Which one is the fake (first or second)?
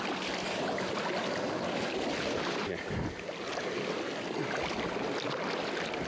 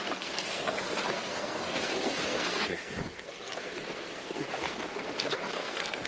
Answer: second